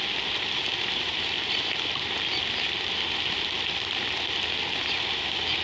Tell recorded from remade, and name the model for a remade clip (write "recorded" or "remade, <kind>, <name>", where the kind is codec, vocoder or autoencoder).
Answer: recorded